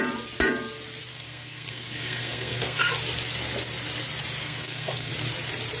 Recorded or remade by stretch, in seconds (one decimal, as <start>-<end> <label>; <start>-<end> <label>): 0.0-1.1 recorded; 1.1-2.9 remade; 2.9-4.4 recorded; 4.4-5.1 remade; 5.1-5.8 recorded